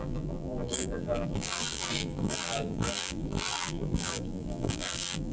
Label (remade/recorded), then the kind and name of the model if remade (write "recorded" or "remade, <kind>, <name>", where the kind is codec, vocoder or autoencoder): remade, vocoder, BigVGAN v2